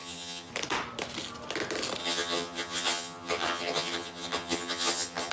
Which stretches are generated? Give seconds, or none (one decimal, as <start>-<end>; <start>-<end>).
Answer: 0.0-0.5; 2.0-5.3